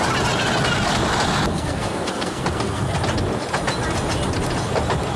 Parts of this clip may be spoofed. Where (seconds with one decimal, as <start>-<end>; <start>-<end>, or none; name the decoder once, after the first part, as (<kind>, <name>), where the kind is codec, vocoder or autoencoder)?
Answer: 1.5-2.9 (codec, SNAC)